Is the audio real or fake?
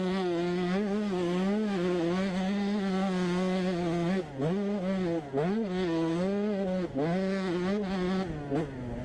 real